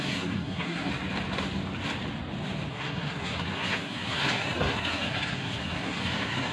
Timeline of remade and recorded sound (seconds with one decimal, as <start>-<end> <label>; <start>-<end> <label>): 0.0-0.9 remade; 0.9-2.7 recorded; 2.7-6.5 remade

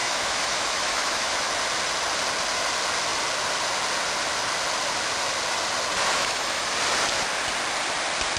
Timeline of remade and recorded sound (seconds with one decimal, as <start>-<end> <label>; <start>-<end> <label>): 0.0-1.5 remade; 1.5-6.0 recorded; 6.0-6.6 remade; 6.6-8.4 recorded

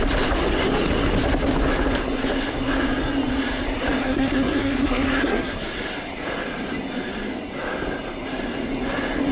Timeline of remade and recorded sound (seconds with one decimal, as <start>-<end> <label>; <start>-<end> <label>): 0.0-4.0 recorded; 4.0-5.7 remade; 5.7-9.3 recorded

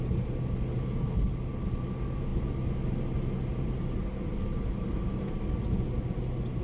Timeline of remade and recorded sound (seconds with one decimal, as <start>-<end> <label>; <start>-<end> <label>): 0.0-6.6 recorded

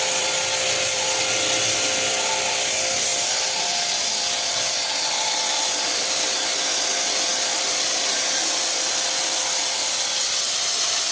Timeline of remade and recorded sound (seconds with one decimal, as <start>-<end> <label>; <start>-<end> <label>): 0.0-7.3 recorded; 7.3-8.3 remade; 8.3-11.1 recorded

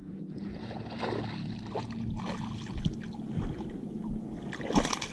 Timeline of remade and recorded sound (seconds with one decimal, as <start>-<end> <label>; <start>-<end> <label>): 0.0-1.0 remade; 1.0-5.1 recorded